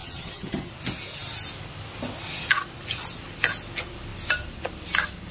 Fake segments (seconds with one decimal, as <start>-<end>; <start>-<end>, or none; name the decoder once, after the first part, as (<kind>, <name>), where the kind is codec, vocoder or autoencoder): 0.0-0.7 (vocoder, HiFi-GAN)